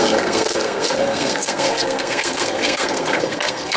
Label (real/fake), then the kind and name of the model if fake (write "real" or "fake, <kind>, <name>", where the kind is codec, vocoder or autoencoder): fake, codec, SNAC